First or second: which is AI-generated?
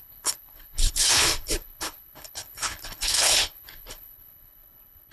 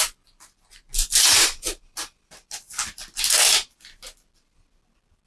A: first